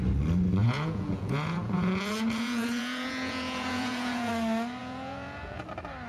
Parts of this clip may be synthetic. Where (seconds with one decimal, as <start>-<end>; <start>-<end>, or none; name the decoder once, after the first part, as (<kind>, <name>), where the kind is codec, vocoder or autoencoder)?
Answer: 0.6-4.3 (vocoder, Vocos); 4.8-5.6

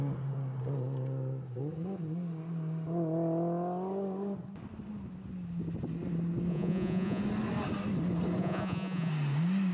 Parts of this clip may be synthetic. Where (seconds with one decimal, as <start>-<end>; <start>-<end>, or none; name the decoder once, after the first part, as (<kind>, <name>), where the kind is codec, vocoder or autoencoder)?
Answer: 6.5-7.2 (vocoder, Vocos); 8.4-9.1

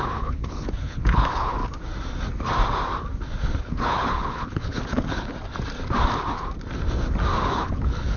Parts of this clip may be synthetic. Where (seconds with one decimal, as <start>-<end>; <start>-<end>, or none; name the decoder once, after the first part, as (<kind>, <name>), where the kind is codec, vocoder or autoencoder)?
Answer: 0.0-1.6 (codec, HILCodec); 3.6-5.3; 7.5-8.2